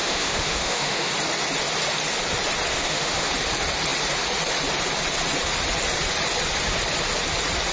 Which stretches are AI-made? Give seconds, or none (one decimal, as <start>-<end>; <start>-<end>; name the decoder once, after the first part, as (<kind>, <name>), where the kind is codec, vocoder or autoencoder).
0.0-1.1 (autoencoder, DAC-VAE); 2.7-3.3